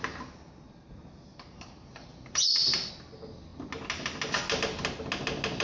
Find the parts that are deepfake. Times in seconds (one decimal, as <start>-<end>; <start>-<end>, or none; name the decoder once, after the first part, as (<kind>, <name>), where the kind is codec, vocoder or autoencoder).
1.3-2.9 (vocoder, BigVGAN v2)